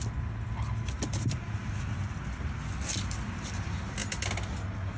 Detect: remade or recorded recorded